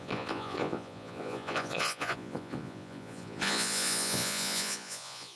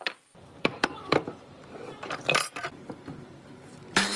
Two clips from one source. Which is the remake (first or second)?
first